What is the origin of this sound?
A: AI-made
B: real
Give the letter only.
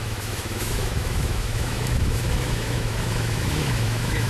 A